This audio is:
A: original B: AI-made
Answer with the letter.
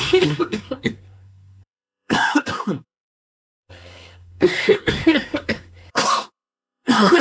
B